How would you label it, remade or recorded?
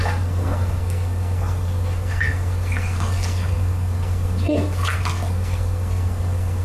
remade